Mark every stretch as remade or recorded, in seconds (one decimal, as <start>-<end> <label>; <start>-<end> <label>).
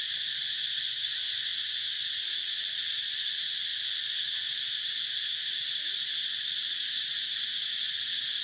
0.0-1.5 remade; 1.5-2.5 recorded; 2.5-3.7 remade; 3.7-4.5 recorded; 4.5-8.4 remade